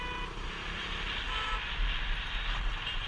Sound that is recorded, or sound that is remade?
recorded